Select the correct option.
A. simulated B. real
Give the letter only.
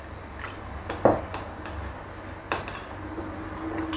B